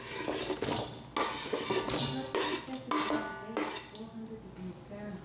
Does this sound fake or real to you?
real